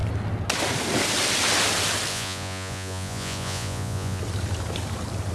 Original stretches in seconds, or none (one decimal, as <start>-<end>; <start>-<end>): 0.0-2.1; 4.2-5.3